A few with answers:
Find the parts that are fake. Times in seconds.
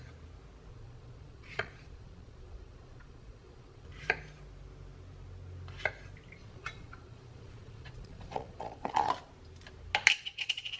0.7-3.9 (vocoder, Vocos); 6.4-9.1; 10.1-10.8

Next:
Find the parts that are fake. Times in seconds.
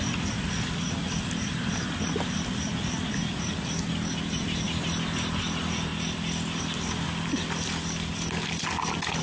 none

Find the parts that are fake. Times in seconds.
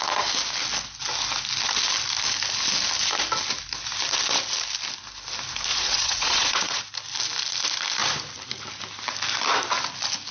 5.7-6.8 (vocoder, WaveNeXt)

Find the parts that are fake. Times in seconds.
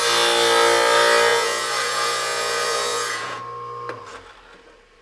1.3-3.4 (vocoder, Vocos)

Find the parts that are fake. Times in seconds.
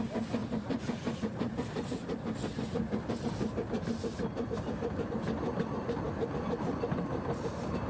0.4-5.1 (vocoder, BigVGAN v2)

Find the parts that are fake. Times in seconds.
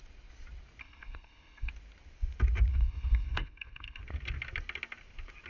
0.8-1.7 (codec, SNAC); 2.7-4.0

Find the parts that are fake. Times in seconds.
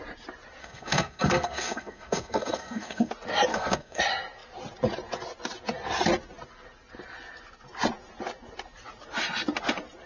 0.6-3.1 (codec, SNAC); 3.5-4.0